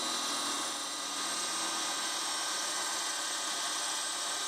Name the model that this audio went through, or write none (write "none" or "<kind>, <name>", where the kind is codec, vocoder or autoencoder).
none